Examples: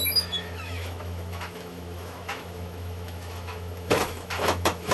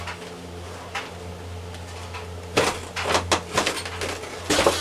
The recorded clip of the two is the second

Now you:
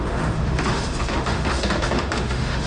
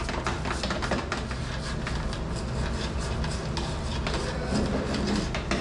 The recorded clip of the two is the second